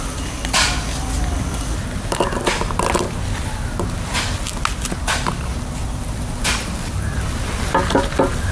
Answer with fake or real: real